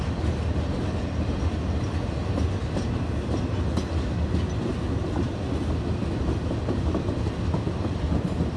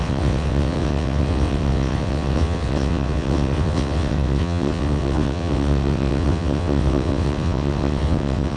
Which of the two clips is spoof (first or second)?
second